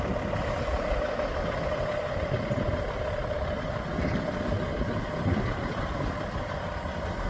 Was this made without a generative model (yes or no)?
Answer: yes